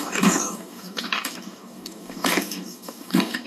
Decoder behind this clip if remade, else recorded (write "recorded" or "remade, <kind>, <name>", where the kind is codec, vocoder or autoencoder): remade, codec, DAC